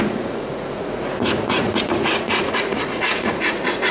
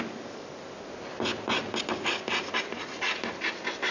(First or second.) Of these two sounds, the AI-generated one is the first